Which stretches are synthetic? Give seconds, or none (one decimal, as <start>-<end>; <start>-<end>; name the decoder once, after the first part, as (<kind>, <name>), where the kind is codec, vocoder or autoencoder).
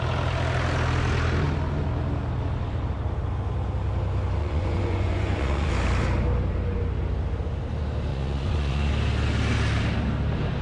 4.4-5.7 (vocoder, Vocos); 8.1-8.9